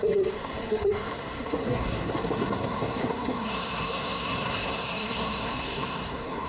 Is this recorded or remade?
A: remade